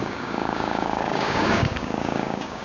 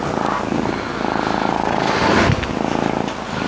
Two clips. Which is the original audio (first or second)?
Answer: second